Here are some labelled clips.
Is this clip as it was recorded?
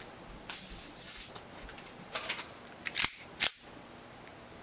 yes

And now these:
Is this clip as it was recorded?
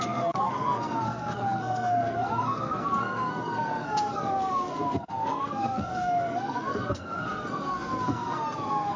no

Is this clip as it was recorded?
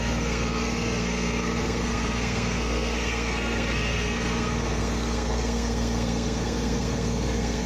no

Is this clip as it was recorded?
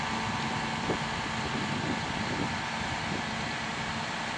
yes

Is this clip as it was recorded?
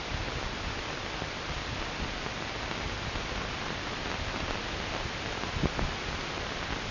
yes